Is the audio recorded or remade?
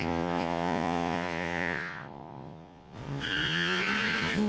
remade